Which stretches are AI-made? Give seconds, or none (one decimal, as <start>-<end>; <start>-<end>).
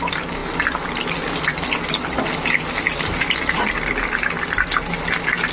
none